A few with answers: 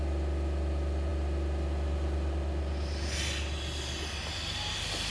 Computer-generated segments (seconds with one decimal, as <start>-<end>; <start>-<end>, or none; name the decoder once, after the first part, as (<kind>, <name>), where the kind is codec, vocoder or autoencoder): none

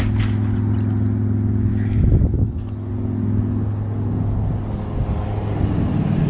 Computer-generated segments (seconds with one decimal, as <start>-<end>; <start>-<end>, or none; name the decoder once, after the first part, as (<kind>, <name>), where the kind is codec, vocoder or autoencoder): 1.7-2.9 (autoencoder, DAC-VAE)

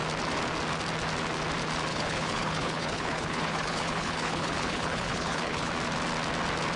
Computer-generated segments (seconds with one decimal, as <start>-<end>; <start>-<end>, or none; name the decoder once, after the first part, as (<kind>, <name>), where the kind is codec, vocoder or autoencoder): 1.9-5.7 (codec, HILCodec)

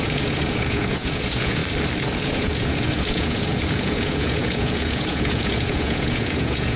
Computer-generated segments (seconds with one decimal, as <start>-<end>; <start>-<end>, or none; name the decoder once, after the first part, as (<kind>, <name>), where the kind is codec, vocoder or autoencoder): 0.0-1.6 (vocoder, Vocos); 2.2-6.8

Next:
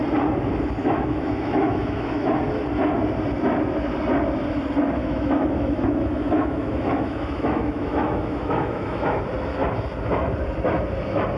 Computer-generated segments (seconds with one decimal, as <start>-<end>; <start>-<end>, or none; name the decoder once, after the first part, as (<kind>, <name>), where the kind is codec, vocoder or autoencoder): 0.8-2.4 (autoencoder, DAC-VAE); 5.0-9.2